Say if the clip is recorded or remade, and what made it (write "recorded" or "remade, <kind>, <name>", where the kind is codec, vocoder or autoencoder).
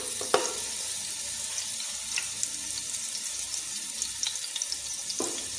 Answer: recorded